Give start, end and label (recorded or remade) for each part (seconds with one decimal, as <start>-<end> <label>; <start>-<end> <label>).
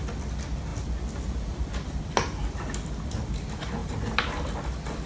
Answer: 0.0-3.8 recorded; 3.8-5.1 remade